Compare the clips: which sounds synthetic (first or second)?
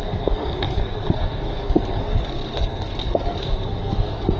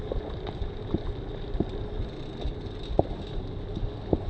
first